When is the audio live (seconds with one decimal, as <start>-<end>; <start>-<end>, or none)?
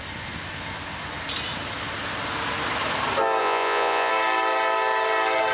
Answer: 0.0-3.4; 4.1-5.5